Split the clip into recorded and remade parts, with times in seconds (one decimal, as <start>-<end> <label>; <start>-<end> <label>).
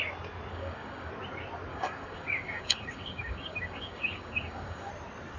0.0-0.5 recorded; 0.5-1.1 remade; 1.1-1.7 recorded; 1.7-4.9 remade; 4.9-5.4 recorded